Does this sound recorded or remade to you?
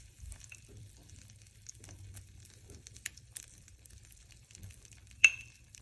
remade